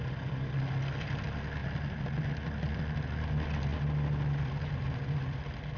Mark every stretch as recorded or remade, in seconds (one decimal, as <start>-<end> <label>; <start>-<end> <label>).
0.0-5.8 recorded